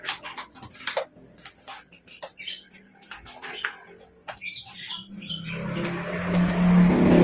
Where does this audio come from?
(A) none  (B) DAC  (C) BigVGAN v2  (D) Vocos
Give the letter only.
A